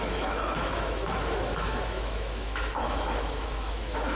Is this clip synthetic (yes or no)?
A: yes